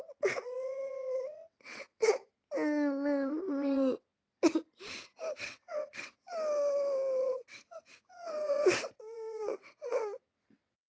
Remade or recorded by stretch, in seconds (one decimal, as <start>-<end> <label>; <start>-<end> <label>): 0.0-2.2 remade; 2.2-3.3 recorded; 3.3-4.1 remade; 4.1-5.4 recorded; 5.4-6.3 remade; 6.3-7.2 recorded; 7.2-10.9 remade